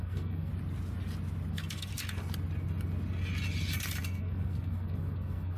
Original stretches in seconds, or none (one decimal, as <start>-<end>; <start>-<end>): 0.5-1.5; 1.9-4.0